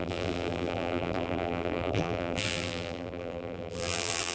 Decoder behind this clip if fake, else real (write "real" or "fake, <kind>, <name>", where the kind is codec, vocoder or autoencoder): fake, vocoder, BigVGAN v2